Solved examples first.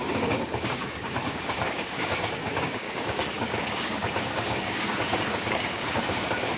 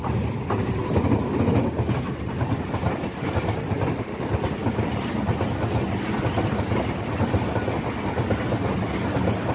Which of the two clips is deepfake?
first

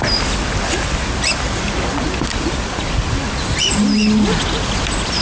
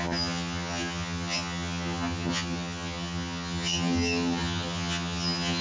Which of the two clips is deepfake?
second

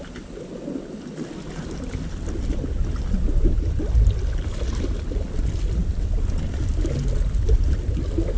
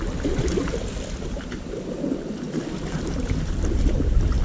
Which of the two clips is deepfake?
second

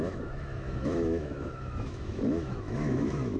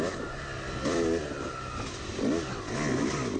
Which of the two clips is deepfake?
first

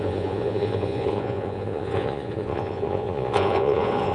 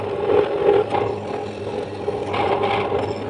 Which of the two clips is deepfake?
first